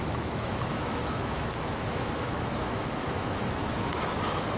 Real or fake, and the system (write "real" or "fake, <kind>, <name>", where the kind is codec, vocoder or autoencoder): fake, autoencoder, DAC-VAE